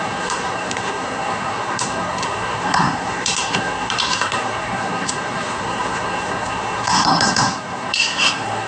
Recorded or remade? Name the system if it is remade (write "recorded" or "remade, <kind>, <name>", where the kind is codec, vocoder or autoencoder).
remade, codec, SNAC